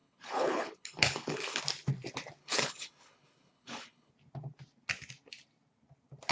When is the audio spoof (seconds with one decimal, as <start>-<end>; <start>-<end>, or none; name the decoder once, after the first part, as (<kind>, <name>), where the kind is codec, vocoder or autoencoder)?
0.0-1.6 (codec, HILCodec); 2.4-4.1